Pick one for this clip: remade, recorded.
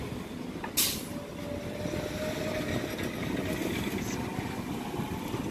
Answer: recorded